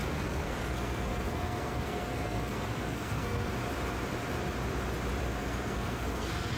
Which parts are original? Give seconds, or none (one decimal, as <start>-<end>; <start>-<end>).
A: 3.5-5.4